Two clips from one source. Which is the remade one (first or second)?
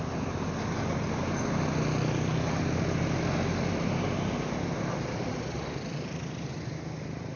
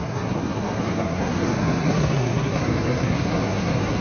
second